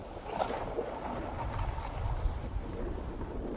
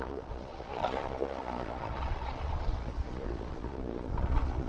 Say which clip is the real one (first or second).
first